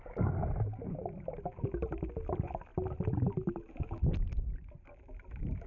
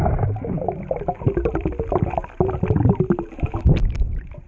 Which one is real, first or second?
first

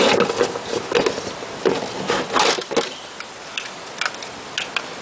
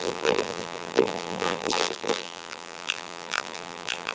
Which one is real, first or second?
first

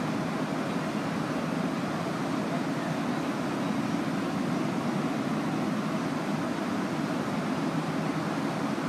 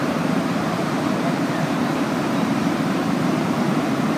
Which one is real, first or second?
first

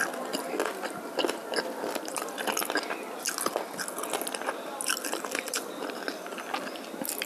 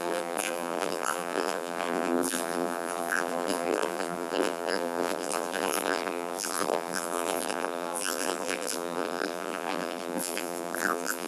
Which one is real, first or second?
first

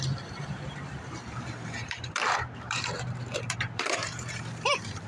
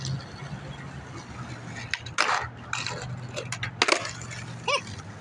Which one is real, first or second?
second